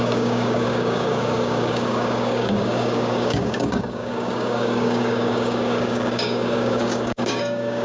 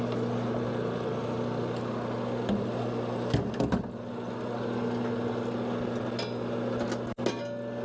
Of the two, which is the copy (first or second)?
first